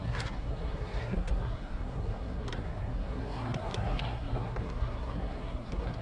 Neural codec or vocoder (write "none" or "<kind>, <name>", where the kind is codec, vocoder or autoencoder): codec, SNAC